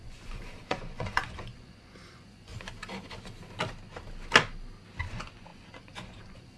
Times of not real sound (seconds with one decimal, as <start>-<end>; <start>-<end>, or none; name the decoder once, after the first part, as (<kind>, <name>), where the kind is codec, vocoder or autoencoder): 0.0-2.5 (vocoder, Vocos); 5.1-6.6